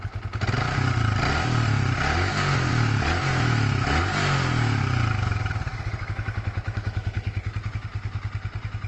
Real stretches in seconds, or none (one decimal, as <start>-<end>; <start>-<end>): 0.0-2.7; 4.0-5.7; 7.4-8.9